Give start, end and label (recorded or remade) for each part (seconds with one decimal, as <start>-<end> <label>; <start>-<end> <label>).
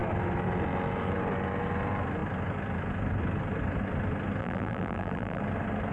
0.0-4.4 recorded; 4.4-5.4 remade; 5.4-5.9 recorded